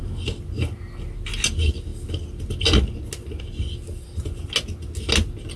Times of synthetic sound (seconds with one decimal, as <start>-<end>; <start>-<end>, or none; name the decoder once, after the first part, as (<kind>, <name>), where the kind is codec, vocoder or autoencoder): none